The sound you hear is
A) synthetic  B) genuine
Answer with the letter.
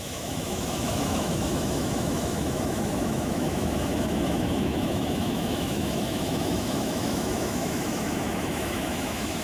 A